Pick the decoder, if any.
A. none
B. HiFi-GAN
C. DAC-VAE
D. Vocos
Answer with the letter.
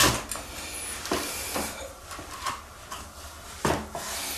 A